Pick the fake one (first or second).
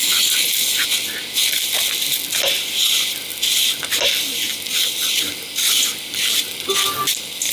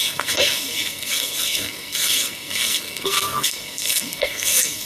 second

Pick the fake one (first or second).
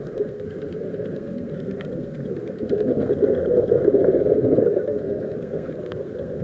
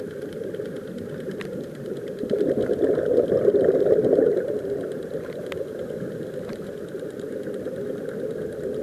first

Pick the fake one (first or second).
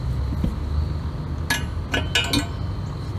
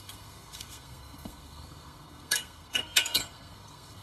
second